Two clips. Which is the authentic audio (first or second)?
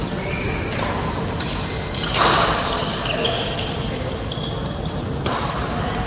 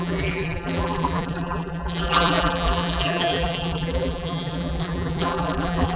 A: first